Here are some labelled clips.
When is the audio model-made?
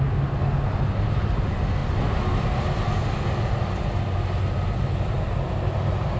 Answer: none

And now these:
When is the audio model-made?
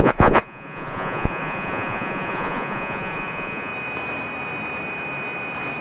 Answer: 0.0-3.7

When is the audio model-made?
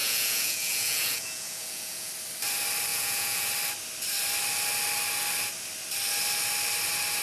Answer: 0.0-2.1; 2.9-3.5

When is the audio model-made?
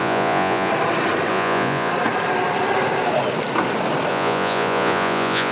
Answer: 0.0-0.7; 1.3-1.9; 4.1-5.5